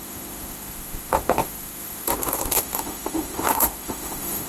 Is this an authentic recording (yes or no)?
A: no